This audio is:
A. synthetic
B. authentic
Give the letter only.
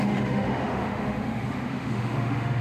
A